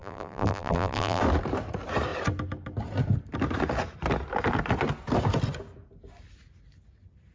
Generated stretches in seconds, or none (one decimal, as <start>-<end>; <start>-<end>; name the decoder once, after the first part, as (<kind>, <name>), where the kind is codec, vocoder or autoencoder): 0.0-1.2 (vocoder, BigVGAN v2)